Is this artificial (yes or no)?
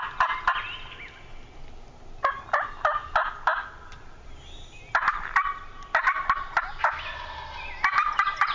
no